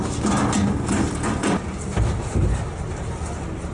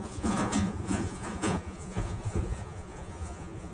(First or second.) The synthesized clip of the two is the second